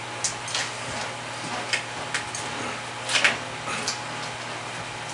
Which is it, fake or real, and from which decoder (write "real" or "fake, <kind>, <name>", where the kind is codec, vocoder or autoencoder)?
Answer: real